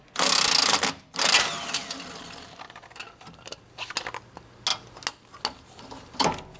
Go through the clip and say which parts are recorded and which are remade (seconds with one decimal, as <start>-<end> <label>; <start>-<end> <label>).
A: 0.0-6.6 recorded